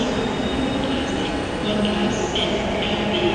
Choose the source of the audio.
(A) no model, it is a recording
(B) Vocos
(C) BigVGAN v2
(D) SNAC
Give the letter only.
A